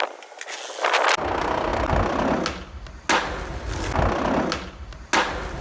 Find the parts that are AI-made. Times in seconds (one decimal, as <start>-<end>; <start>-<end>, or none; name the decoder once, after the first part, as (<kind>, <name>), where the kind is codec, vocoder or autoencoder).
none